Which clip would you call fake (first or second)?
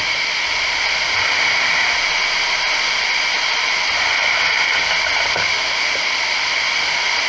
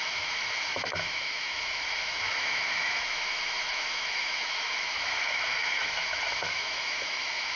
second